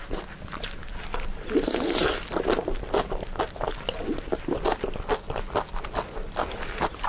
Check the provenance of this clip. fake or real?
real